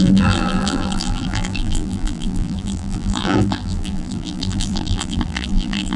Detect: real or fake fake